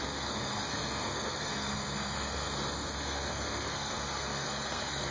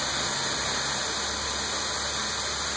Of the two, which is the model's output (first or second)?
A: first